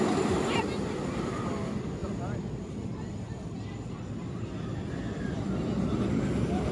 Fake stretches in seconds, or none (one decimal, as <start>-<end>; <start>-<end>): none